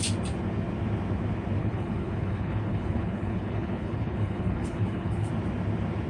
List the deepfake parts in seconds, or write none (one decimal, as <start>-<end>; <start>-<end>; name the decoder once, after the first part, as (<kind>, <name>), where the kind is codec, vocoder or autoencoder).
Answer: 1.6-5.3 (codec, HILCodec)